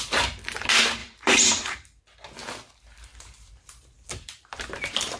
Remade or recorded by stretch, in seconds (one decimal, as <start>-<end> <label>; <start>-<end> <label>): 0.0-1.0 recorded; 1.0-2.0 remade; 2.0-3.1 recorded; 3.1-5.2 remade